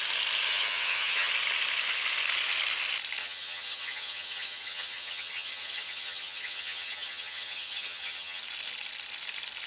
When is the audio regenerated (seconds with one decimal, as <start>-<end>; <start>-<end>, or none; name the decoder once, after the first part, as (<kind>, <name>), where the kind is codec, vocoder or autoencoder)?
0.5-1.3 (vocoder, HiFi-GAN); 3.2-8.4